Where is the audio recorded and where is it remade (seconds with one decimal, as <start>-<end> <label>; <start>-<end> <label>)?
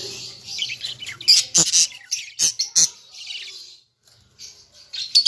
0.0-1.0 remade; 1.0-5.3 recorded